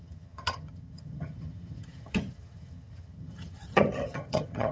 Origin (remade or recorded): remade